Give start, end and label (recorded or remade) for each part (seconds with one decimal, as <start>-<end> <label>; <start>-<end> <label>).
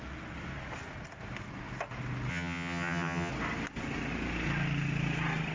0.0-2.3 recorded; 2.3-3.3 remade; 3.3-5.5 recorded